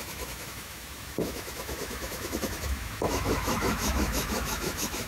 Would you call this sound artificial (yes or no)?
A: yes